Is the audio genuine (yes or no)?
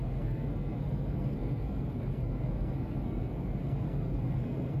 no